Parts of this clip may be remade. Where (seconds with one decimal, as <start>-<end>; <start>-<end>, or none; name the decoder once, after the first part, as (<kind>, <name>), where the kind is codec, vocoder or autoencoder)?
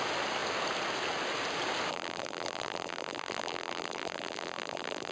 1.9-5.1 (vocoder, BigVGAN v2)